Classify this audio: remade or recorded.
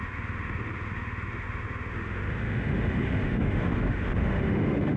remade